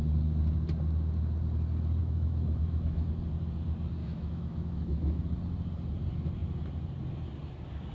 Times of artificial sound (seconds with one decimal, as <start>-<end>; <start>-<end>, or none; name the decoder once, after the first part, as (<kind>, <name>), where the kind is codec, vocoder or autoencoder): 2.0-3.1 (autoencoder, DAC-VAE); 4.0-5.2